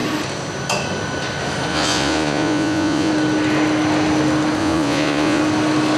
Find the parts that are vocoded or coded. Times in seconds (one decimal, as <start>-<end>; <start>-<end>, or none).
1.7-3.1; 4.6-5.4